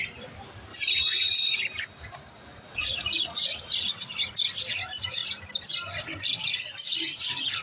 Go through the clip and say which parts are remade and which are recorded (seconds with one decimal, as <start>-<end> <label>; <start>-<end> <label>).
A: 0.0-0.7 recorded; 0.7-1.6 remade; 1.6-2.5 recorded; 2.5-4.2 remade; 4.2-7.6 recorded